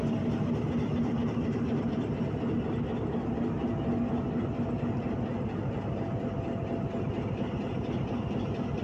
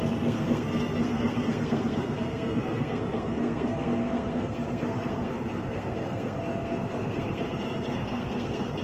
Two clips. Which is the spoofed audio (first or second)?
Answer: second